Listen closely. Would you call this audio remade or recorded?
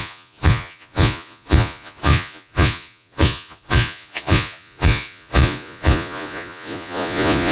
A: remade